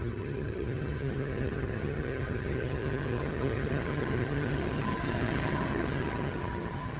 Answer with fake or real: fake